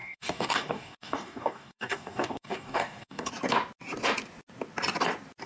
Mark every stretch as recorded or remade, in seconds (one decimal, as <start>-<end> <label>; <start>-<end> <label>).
0.0-3.3 remade; 3.3-5.5 recorded